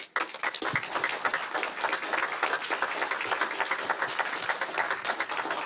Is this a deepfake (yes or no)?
no